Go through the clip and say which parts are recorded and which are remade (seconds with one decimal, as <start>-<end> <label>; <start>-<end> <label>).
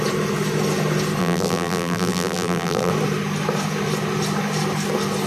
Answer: 0.0-1.2 recorded; 1.2-2.9 remade; 2.9-5.3 recorded